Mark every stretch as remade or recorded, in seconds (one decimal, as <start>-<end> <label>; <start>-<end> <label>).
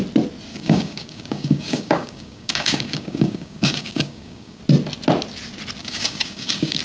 0.0-0.5 recorded; 0.5-4.6 remade; 4.6-5.8 recorded; 5.8-6.8 remade